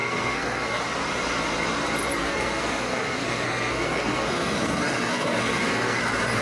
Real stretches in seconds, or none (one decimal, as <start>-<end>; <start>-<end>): 0.8-2.2; 6.0-6.4